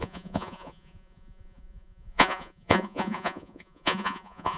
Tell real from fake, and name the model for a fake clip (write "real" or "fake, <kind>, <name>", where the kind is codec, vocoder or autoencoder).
fake, vocoder, Vocos